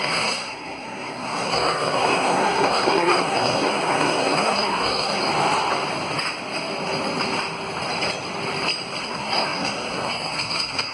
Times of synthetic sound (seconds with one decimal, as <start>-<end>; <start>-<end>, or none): 0.0-5.2; 9.0-10.9